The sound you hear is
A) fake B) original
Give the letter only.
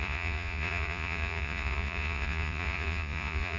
A